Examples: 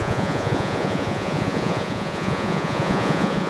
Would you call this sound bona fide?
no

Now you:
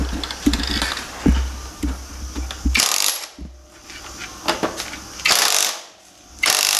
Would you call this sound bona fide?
yes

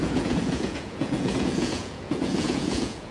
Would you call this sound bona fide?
no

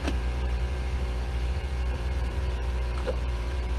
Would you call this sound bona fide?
no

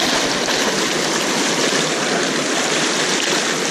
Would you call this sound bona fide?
yes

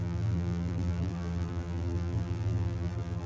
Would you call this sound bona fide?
no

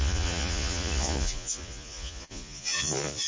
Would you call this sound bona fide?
no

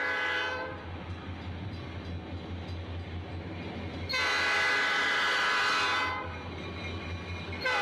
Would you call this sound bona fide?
yes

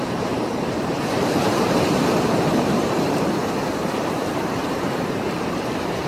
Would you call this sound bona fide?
no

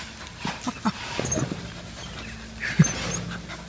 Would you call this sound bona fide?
yes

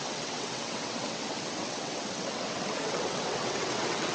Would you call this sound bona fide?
no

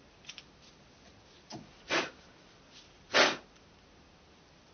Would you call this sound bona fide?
yes